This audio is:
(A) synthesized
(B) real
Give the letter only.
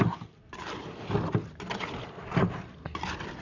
B